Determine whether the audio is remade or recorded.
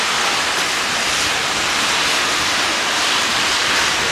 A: recorded